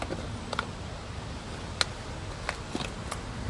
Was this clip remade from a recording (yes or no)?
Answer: no